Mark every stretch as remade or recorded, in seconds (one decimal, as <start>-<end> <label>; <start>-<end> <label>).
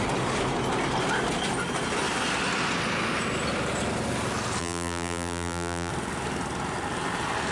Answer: 0.0-4.6 recorded; 4.6-5.9 remade; 5.9-7.5 recorded